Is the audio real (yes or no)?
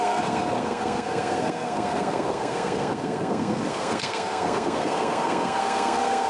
no